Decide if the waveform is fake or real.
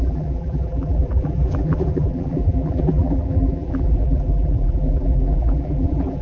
fake